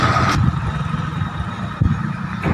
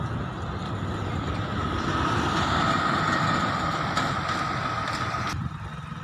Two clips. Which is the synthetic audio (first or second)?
first